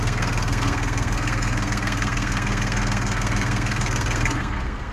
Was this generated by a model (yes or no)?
yes